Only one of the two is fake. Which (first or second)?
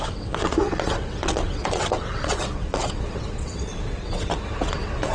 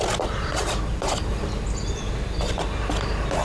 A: first